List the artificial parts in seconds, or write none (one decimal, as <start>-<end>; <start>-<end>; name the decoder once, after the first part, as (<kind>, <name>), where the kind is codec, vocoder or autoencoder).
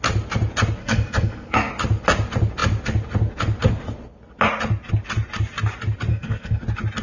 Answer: 0.8-1.7 (codec, SNAC); 6.1-6.6